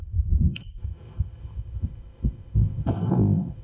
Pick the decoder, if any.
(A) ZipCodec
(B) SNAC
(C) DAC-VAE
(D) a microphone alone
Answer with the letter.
A